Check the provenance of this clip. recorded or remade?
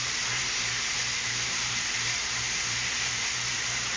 remade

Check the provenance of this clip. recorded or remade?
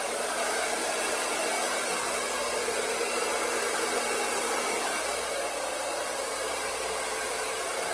remade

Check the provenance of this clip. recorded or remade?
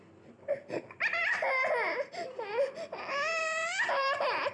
remade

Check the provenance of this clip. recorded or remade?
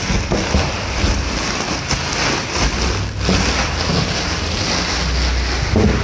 recorded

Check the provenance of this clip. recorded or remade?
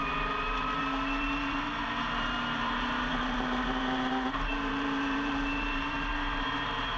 remade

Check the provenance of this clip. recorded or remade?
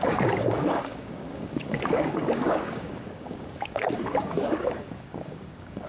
remade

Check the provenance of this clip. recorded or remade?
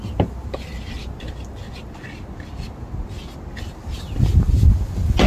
recorded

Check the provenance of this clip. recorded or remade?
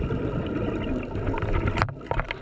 recorded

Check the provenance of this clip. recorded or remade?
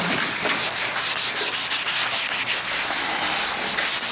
recorded